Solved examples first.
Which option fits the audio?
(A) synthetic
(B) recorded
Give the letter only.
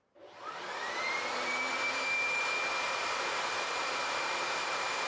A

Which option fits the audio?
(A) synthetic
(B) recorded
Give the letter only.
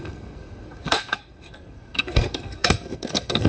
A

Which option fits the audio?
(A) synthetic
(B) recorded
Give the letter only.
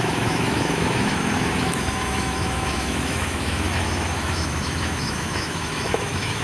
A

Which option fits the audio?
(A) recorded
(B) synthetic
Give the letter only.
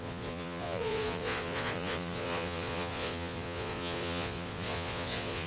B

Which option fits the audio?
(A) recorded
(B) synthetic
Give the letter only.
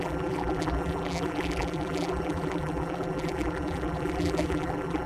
B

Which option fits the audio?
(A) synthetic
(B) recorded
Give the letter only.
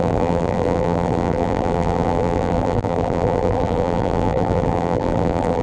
A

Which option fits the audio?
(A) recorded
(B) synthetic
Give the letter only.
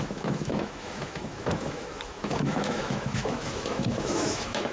B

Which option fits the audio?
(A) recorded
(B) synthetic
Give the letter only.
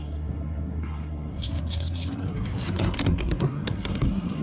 B